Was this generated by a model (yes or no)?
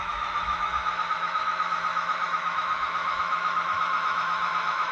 yes